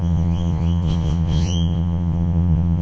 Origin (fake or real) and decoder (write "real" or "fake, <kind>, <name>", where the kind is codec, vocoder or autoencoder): fake, vocoder, Vocos